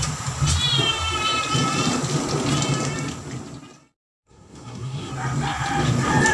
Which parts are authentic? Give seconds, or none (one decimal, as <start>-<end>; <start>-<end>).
0.0-4.2; 5.1-6.3